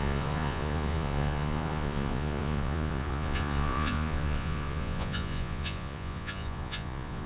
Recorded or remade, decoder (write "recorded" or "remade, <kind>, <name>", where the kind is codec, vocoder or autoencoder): remade, vocoder, Vocos